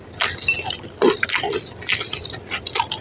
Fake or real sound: real